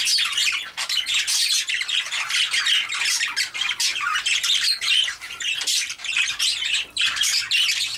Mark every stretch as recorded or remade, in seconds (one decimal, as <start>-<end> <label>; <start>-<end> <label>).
0.0-3.9 recorded; 3.9-7.4 remade; 7.4-8.0 recorded